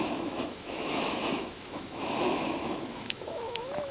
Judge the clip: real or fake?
fake